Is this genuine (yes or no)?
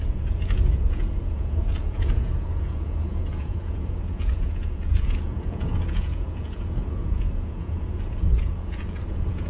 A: no